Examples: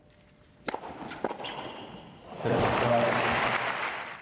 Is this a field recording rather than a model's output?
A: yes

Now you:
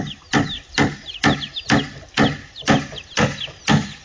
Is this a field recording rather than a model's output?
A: yes